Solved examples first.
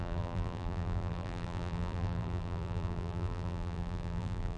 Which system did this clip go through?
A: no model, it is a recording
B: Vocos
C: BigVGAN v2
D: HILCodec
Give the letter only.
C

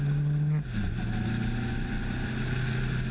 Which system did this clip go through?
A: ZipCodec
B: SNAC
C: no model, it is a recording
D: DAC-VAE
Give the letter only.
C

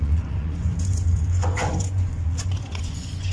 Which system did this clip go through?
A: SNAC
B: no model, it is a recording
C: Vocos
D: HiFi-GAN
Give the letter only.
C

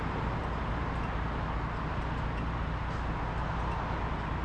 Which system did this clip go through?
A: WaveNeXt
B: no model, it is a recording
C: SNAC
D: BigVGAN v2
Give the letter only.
B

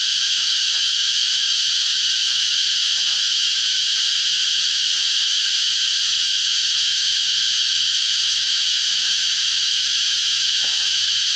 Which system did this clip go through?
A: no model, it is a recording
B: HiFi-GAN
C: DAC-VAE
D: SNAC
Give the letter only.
C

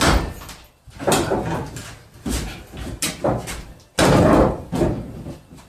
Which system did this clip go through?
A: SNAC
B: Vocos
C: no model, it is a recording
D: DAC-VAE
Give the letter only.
C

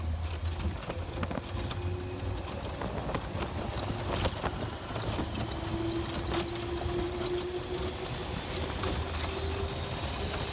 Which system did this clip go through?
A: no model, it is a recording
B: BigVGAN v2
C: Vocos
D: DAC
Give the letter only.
A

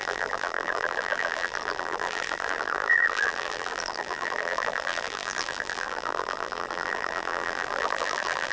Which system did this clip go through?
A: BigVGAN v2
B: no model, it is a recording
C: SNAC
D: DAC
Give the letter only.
A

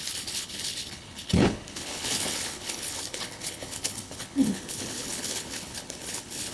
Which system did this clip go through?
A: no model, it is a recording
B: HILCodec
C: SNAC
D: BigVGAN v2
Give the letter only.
B